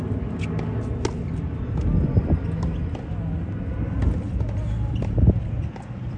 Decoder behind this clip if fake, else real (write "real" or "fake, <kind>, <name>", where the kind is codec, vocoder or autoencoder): real